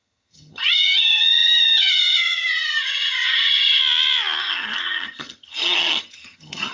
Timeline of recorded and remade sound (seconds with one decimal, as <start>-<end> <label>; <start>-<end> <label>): 0.0-3.8 remade; 3.8-4.4 recorded; 4.4-6.7 remade